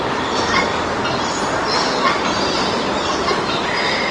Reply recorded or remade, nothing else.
remade